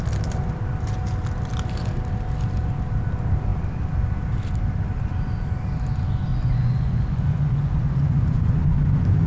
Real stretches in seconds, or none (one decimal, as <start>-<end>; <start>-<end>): 0.0-6.3